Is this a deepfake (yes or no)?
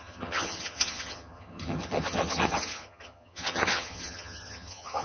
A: yes